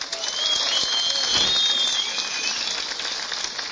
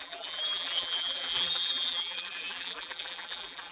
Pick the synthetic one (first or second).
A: second